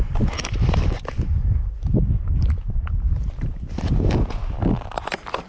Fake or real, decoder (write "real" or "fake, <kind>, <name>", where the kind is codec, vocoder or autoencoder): real